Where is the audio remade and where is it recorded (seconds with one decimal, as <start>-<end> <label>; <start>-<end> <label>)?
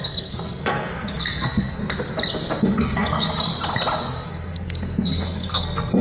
0.0-1.8 remade; 1.8-2.6 recorded; 2.6-3.5 remade; 3.5-4.1 recorded; 4.1-6.0 remade